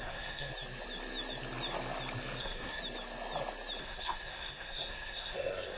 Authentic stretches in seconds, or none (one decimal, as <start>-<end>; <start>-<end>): 0.5-2.4; 2.8-3.8